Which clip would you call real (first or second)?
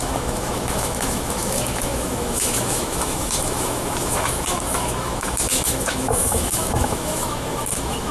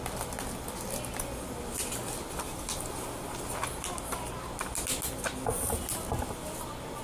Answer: second